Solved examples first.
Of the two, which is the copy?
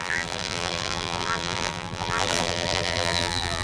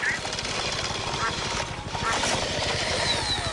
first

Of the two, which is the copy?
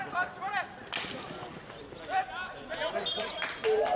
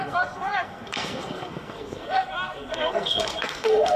second